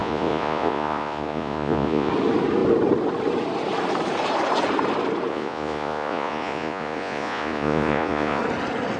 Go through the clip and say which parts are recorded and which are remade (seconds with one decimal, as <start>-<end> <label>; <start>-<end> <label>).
0.0-2.1 remade; 2.1-5.3 recorded; 5.3-8.4 remade; 8.4-9.0 recorded